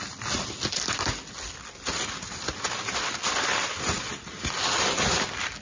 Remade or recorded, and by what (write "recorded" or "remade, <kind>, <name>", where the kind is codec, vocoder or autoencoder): recorded